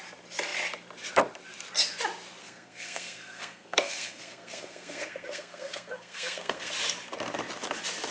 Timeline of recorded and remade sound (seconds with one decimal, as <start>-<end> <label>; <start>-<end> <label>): 0.0-2.4 recorded; 2.4-6.7 remade; 6.7-8.1 recorded